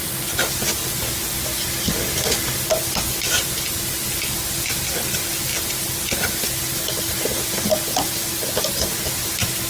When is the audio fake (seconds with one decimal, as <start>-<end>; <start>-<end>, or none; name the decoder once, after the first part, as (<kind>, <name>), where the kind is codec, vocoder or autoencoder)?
none